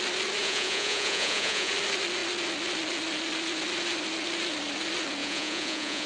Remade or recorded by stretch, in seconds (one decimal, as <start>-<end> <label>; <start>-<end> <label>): 0.0-0.4 recorded; 0.4-1.7 remade; 1.7-5.2 recorded; 5.2-6.1 remade